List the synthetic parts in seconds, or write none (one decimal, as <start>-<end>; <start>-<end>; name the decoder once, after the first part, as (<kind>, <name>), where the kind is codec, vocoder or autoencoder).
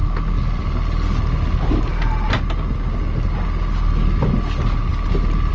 none